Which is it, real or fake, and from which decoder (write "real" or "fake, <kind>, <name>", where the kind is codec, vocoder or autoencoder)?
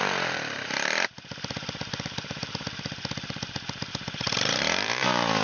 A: fake, vocoder, BigVGAN v2